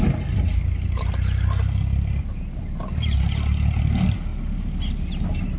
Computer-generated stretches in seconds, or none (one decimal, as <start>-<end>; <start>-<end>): none